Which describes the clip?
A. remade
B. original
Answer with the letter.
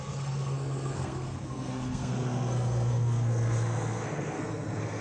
A